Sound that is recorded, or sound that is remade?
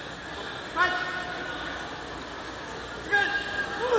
recorded